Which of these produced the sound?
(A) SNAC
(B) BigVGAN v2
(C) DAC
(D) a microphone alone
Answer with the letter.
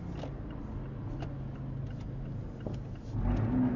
D